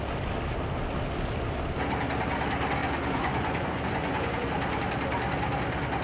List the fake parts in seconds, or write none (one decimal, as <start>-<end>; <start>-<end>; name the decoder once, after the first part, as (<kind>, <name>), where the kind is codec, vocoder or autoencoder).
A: 2.8-4.4 (vocoder, Vocos)

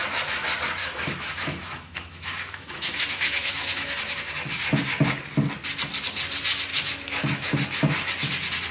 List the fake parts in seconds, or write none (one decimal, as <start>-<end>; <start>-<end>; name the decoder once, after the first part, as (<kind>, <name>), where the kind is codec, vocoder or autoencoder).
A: 0.8-4.2 (autoencoder, DAC-VAE); 6.7-7.5

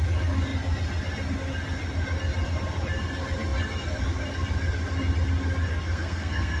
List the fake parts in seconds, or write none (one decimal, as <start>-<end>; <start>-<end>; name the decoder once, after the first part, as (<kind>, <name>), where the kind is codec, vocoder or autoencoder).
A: 5.7-6.6 (codec, SNAC)

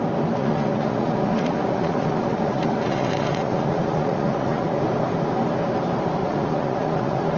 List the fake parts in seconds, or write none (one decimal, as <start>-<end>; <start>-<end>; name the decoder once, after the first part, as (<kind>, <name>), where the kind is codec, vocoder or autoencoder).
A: 0.4-4.8 (vocoder, Vocos); 6.2-7.4

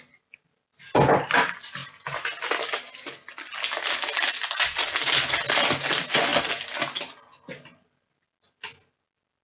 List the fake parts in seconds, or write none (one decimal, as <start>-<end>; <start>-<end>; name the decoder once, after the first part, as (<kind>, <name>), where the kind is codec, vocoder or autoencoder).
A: none

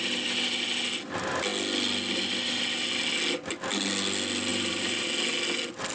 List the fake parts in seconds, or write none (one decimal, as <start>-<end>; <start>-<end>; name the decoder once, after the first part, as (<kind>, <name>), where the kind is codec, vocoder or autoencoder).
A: 4.5-5.1 (vocoder, BigVGAN v2)

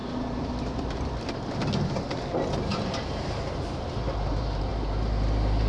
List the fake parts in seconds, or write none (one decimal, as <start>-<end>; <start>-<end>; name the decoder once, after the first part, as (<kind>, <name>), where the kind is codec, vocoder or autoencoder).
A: 0.0-1.7 (vocoder, BigVGAN v2); 2.7-4.3